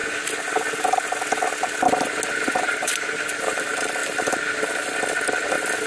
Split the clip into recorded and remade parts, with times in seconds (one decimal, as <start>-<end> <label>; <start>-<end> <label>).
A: 0.0-2.5 recorded; 2.5-4.0 remade; 4.0-5.9 recorded